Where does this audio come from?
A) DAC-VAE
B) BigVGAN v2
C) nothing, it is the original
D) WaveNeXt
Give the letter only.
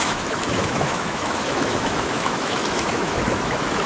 A